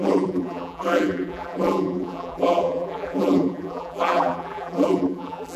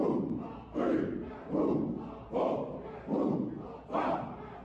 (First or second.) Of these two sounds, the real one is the second